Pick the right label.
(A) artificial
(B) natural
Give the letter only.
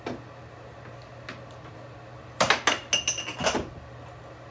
B